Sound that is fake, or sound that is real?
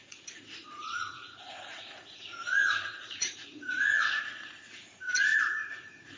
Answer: fake